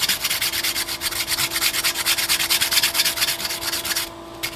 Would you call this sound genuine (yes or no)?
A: yes